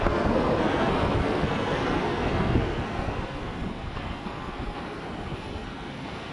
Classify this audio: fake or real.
fake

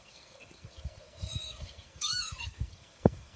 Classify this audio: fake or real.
fake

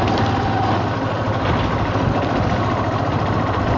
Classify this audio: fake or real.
real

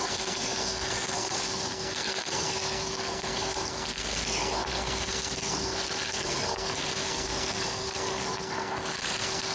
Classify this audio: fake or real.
fake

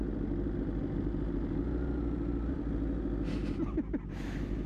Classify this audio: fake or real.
real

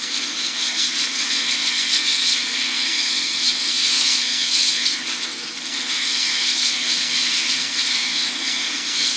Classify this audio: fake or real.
fake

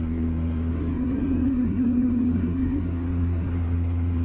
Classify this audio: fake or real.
fake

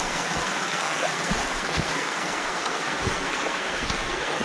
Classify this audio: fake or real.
fake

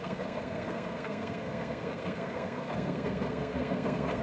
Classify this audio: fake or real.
fake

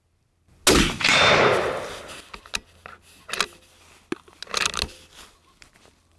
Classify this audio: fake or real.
real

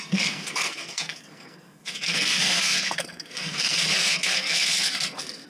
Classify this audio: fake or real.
fake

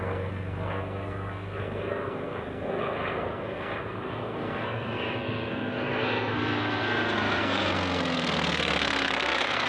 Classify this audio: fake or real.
fake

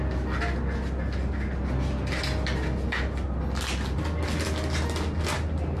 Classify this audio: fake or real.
real